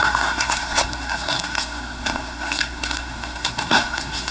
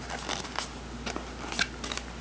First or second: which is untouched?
second